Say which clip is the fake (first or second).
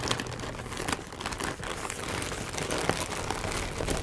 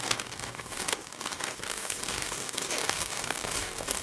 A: second